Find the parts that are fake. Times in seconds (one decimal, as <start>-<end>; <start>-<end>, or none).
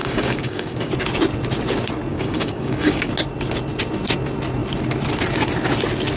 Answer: 0.0-0.9; 2.1-3.1